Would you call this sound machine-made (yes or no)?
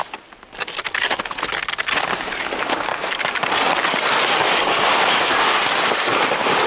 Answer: no